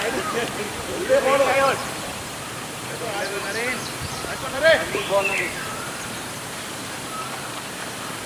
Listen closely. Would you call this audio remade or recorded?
remade